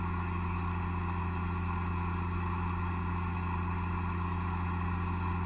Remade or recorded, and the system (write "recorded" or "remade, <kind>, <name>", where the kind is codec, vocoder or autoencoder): recorded